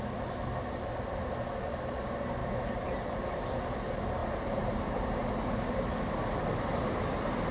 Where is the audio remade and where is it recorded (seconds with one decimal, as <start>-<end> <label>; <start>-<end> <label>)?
0.0-2.4 recorded; 2.4-3.5 remade; 3.5-4.2 recorded; 4.2-5.9 remade; 5.9-7.5 recorded